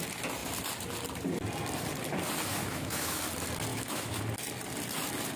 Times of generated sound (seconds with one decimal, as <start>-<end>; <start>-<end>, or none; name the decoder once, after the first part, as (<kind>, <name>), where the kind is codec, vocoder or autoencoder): 2.5-3.2 (autoencoder, DAC-VAE); 3.7-4.2